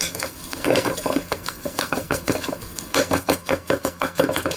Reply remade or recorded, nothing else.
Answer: remade